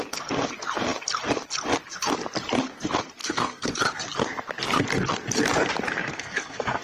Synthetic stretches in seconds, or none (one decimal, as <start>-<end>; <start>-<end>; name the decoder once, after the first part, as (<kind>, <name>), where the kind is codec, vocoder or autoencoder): 3.2-3.7 (codec, SNAC); 6.0-6.8